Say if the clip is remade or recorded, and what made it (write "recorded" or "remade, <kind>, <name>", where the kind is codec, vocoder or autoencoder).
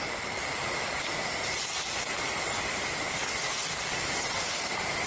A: recorded